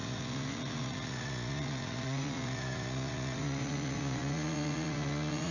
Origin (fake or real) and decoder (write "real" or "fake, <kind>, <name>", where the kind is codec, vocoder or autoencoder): fake, vocoder, Vocos